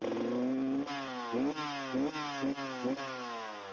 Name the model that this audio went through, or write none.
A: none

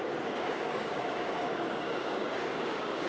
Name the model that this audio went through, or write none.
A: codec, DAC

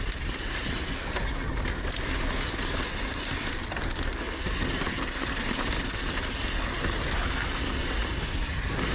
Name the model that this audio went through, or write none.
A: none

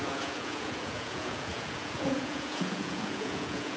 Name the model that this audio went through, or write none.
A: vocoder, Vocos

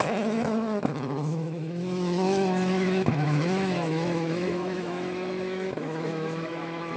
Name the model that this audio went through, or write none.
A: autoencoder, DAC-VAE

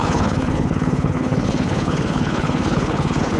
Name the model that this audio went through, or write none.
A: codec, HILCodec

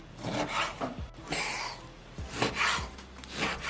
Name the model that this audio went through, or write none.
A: none